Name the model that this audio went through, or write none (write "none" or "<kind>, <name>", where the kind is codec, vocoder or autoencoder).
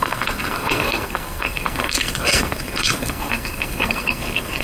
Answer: codec, SNAC